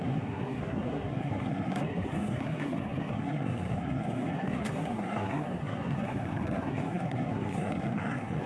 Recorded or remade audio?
remade